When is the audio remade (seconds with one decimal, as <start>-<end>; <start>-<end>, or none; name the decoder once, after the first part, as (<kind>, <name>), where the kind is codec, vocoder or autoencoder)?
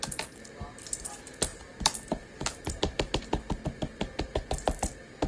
1.5-2.8 (vocoder, BigVGAN v2)